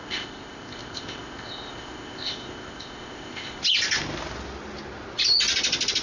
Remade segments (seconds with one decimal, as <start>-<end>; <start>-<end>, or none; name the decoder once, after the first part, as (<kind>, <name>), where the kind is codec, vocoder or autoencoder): 0.0-3.6 (codec, ZipCodec)

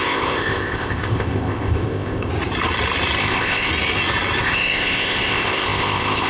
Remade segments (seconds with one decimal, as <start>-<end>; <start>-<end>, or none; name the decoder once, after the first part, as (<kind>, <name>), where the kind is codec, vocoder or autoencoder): 0.0-2.3 (codec, ZipCodec); 3.2-3.7; 4.4-6.3

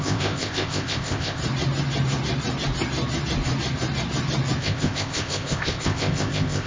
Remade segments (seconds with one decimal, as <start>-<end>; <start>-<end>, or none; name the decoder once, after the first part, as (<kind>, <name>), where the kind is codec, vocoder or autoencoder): 0.0-1.4 (codec, ZipCodec); 4.6-6.7

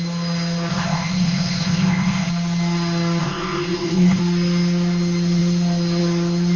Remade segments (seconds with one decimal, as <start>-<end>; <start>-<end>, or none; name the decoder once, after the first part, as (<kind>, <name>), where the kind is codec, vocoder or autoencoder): 0.7-2.3 (codec, ZipCodec); 3.2-4.2

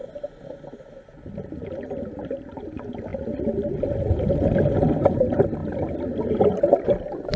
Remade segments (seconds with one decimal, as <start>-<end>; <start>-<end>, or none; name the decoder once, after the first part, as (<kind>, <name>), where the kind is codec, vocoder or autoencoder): none

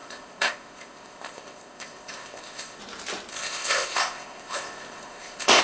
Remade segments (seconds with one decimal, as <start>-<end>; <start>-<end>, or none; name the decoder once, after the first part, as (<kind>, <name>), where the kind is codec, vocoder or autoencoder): 0.0-2.8 (codec, ZipCodec); 3.3-5.6

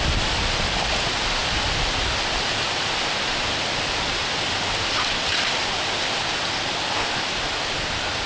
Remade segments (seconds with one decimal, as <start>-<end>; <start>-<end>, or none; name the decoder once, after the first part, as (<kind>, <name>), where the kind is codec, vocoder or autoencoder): none